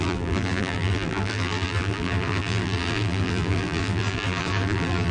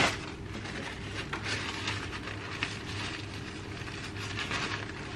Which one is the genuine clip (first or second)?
second